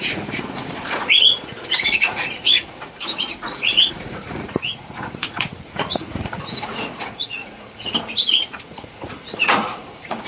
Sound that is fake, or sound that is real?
fake